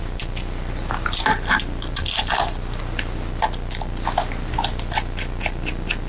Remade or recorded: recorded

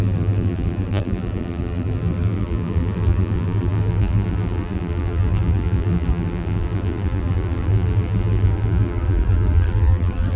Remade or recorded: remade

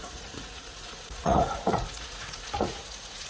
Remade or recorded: remade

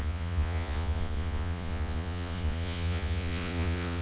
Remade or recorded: remade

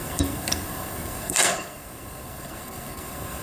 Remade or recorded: remade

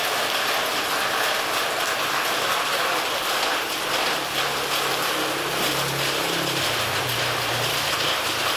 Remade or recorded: recorded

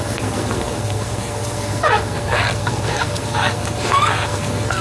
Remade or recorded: remade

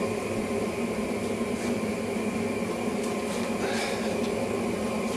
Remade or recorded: recorded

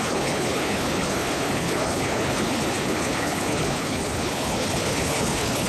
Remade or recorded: remade